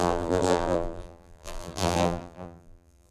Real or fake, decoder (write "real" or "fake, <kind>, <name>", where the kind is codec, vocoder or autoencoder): fake, vocoder, BigVGAN v2